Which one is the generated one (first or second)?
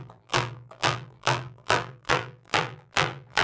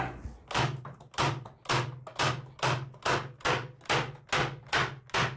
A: first